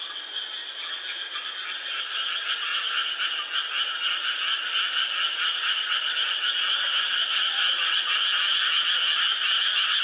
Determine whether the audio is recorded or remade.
recorded